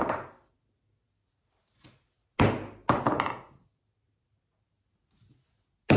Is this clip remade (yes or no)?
no